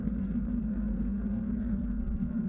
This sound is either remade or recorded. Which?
remade